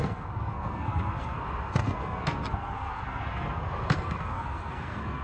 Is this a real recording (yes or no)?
no